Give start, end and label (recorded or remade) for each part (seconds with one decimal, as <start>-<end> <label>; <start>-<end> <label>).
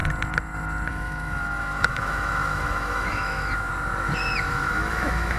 0.0-0.9 recorded; 0.9-3.7 remade; 3.7-4.5 recorded; 4.5-5.4 remade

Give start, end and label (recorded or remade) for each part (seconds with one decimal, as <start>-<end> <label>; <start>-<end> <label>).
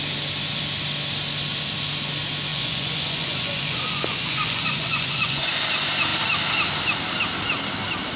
0.0-2.5 recorded; 2.5-5.5 remade; 5.5-8.2 recorded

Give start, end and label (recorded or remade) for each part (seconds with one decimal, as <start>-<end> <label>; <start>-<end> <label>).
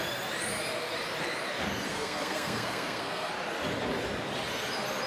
0.0-1.9 recorded; 1.9-3.3 remade; 3.3-5.1 recorded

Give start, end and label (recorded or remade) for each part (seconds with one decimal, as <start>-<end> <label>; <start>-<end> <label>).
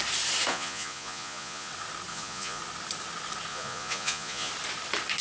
0.0-0.5 recorded; 0.5-1.7 remade; 1.7-2.1 recorded; 2.1-2.6 remade; 2.6-3.5 recorded; 3.5-4.5 remade; 4.5-5.2 recorded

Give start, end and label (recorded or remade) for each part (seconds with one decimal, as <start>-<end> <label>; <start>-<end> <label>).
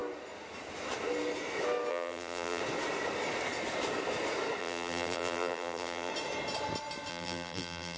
0.0-1.9 recorded; 1.9-2.6 remade; 2.6-4.6 recorded; 4.6-6.1 remade; 6.1-7.1 recorded; 7.1-8.0 remade